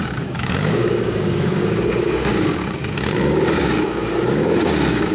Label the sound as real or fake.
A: fake